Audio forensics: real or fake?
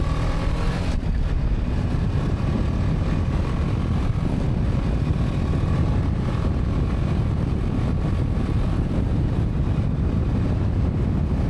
real